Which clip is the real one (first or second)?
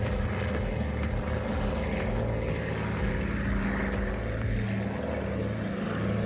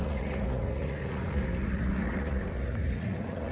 first